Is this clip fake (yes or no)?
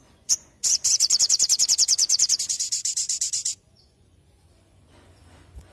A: yes